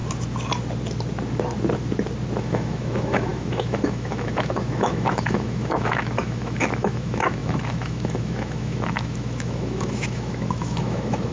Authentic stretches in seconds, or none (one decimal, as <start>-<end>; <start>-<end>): 0.0-2.4